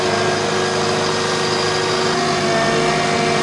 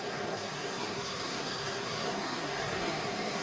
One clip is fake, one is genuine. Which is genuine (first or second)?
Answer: first